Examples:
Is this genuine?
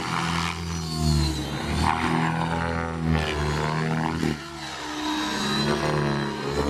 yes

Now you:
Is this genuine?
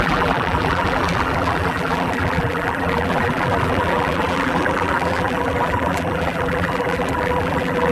no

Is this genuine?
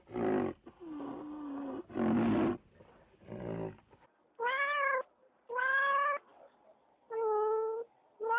yes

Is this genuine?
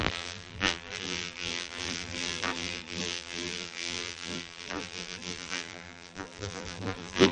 no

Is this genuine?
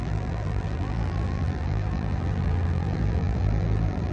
no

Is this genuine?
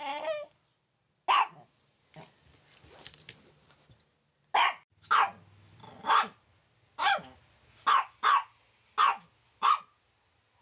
yes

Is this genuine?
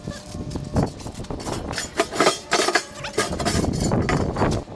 yes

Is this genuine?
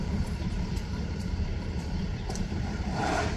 no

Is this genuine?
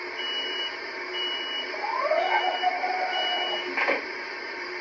no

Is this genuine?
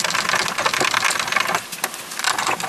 yes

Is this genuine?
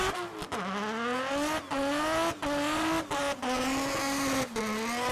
yes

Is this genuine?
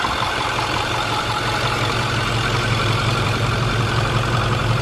no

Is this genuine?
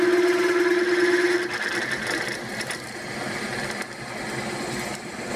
yes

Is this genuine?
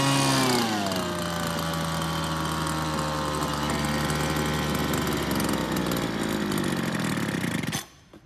yes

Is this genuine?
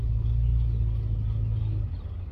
yes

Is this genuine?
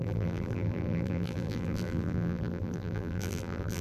no